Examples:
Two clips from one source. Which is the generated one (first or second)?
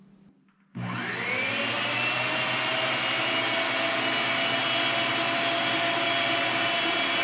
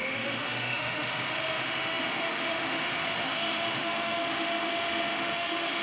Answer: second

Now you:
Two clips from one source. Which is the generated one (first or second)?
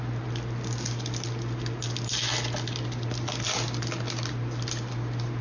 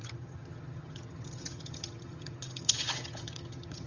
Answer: second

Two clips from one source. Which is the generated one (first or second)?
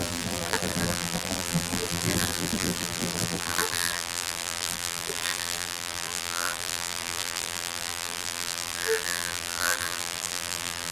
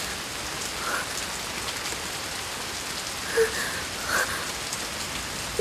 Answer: first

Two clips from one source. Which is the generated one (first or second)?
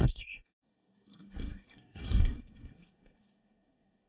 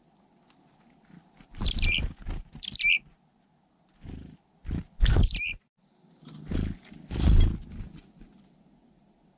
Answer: first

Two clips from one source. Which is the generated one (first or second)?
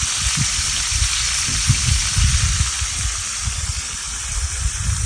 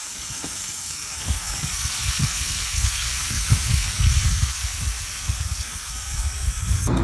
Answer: second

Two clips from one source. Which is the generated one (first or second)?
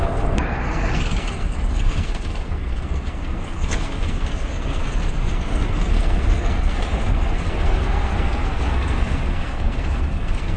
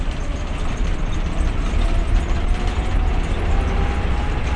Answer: first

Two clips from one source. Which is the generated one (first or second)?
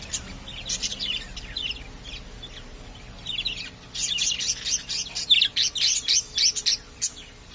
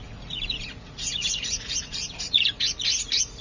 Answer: second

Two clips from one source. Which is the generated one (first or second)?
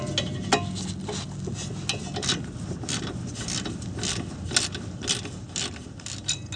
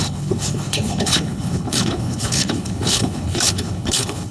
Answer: second